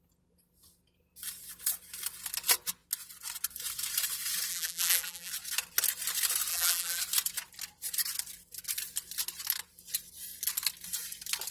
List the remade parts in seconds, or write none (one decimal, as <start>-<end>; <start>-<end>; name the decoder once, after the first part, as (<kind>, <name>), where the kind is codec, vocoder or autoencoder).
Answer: 4.5-5.3 (vocoder, BigVGAN v2); 6.5-7.0